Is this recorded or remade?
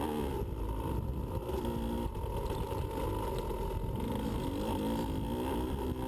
recorded